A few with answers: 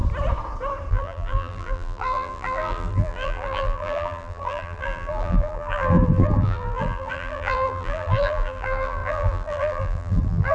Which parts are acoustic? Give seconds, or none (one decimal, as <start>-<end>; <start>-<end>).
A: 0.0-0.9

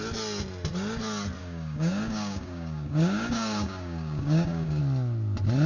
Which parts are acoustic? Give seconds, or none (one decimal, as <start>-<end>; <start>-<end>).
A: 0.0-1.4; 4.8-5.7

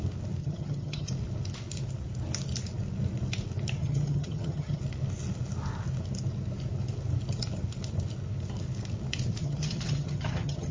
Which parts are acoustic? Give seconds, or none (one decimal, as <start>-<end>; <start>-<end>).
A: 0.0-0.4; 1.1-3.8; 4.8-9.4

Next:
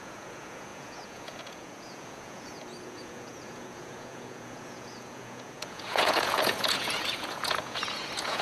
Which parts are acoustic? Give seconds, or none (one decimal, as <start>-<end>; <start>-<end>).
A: none